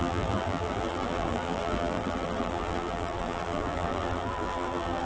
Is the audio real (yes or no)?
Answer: no